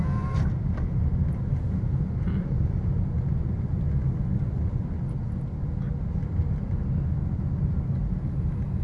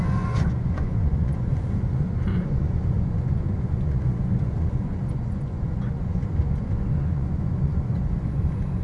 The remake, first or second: second